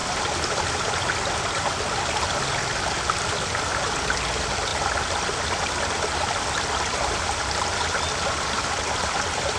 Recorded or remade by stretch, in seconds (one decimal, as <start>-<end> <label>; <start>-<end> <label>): 0.0-4.7 recorded; 4.7-8.0 remade; 8.0-9.6 recorded